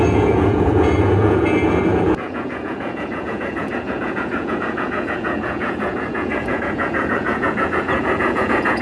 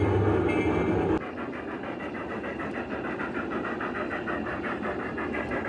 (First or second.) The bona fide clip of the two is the second